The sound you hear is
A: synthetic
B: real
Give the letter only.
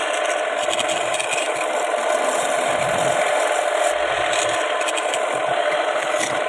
B